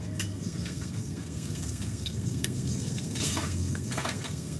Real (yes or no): no